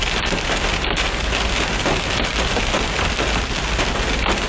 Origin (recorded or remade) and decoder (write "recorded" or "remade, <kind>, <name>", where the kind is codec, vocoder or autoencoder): recorded